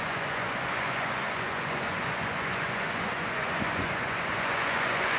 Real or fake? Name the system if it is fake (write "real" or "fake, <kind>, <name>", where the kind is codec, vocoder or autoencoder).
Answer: fake, vocoder, Vocos